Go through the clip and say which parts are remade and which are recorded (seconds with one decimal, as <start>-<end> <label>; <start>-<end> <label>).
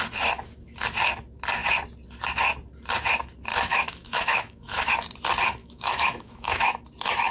0.0-3.5 recorded; 3.5-4.9 remade; 4.9-5.6 recorded; 5.6-6.8 remade; 6.8-7.3 recorded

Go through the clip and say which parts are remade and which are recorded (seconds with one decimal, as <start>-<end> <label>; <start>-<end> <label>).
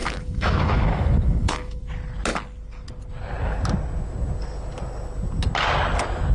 0.0-1.8 remade; 1.8-6.3 recorded